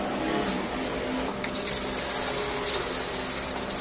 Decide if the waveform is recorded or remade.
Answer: recorded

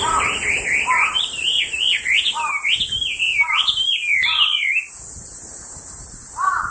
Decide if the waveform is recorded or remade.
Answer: remade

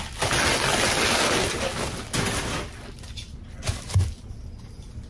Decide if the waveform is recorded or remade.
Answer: recorded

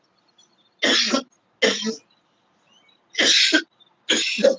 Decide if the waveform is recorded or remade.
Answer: recorded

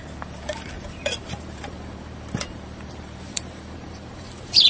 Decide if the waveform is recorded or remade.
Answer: remade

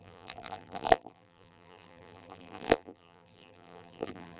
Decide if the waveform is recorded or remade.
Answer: remade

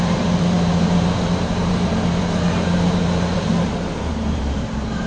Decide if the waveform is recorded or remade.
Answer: remade